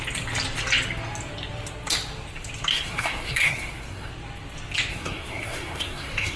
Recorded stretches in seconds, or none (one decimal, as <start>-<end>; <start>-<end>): 0.0-2.7; 4.1-4.9